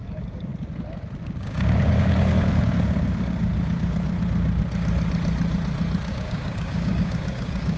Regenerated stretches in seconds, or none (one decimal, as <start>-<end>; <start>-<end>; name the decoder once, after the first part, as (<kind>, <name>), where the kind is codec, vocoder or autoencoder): 0.0-0.5 (codec, DAC); 1.2-3.5; 6.1-7.8